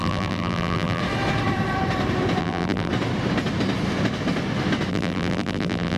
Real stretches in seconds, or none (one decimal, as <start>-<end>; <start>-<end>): 1.0-2.4; 2.9-4.9